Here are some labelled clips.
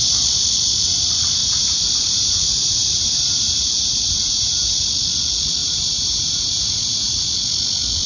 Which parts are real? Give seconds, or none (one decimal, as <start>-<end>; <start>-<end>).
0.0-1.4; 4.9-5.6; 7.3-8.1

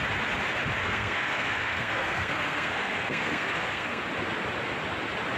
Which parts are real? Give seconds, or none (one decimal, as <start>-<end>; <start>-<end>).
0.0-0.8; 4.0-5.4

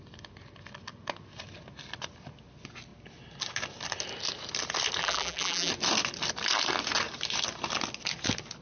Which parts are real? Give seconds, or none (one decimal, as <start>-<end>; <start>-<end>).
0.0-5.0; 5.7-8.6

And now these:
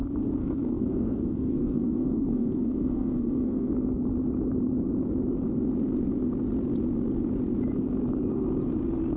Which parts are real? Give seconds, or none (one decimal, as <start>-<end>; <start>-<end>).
0.0-0.4; 3.9-9.2